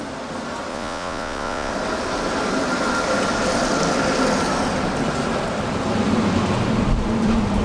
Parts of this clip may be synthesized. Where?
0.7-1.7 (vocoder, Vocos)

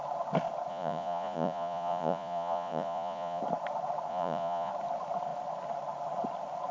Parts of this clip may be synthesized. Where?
0.7-3.4 (vocoder, Vocos); 4.1-4.7

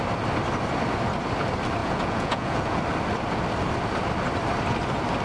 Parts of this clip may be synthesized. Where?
1.8-2.8 (vocoder, Vocos)